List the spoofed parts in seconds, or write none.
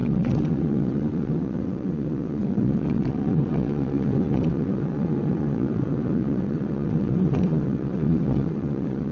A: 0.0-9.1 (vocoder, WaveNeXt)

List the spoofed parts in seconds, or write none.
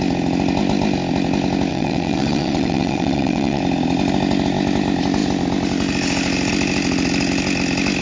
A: 1.7-3.6 (vocoder, WaveNeXt)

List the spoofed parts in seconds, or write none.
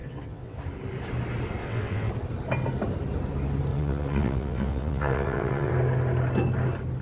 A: 0.0-0.6 (vocoder, WaveNeXt); 1.6-2.1; 3.7-5.7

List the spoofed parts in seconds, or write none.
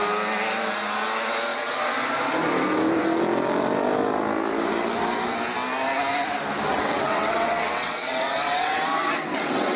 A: 6.7-9.8 (vocoder, WaveNeXt)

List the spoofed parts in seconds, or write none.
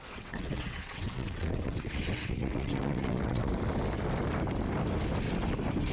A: 0.0-3.5 (vocoder, WaveNeXt)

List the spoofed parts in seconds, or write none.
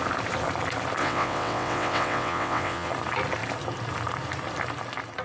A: 1.0-2.9 (vocoder, WaveNeXt)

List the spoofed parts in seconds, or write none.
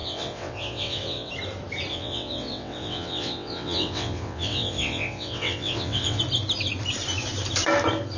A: 0.0-1.3 (vocoder, WaveNeXt); 1.9-6.2